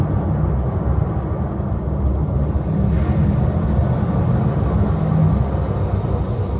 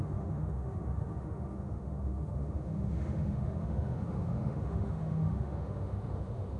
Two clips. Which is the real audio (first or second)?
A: first